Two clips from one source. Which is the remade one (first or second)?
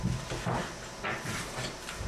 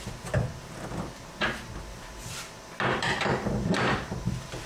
second